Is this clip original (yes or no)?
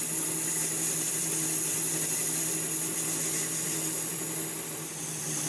yes